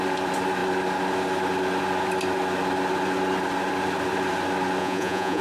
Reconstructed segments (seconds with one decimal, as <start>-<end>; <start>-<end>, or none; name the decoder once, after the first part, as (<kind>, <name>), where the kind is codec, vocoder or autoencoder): 4.8-5.4 (vocoder, Vocos)